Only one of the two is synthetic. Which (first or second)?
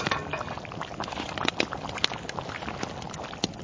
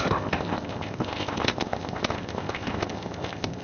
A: second